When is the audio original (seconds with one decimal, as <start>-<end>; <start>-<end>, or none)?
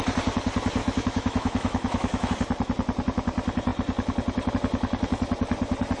0.0-0.8; 2.3-6.0